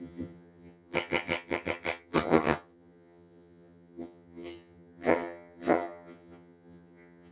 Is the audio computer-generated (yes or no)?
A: yes